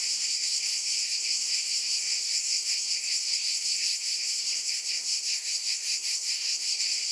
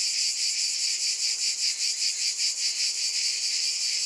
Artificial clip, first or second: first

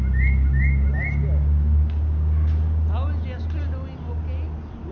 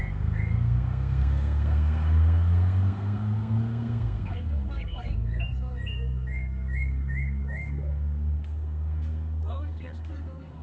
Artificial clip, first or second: second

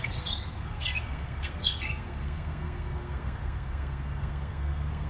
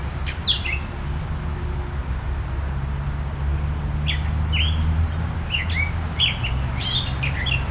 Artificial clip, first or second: first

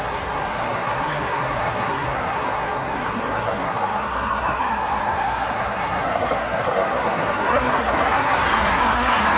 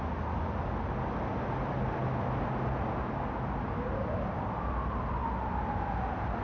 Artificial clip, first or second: first